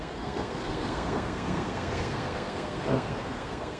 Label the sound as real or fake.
fake